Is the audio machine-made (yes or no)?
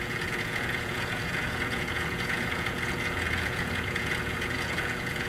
yes